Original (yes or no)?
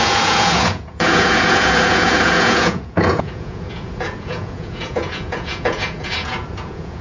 no